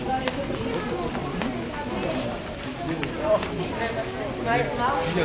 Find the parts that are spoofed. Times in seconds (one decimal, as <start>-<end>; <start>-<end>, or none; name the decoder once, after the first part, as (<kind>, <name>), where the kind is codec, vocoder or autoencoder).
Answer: none